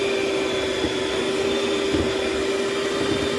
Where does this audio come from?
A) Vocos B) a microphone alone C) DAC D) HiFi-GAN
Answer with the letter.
B